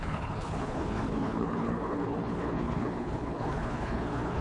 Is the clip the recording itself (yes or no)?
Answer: no